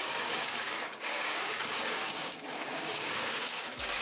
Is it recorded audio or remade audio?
remade